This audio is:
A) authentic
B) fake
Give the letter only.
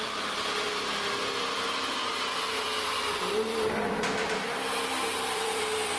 B